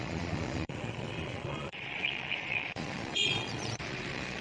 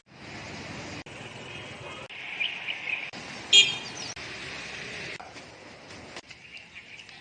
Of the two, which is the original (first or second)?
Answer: second